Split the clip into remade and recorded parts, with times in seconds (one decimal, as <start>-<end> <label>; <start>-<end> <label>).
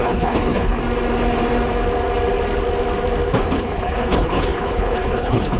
0.0-0.8 remade; 0.8-3.5 recorded; 3.5-5.6 remade